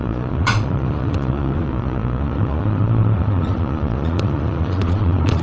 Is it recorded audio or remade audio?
remade